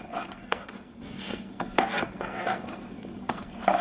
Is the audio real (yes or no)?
no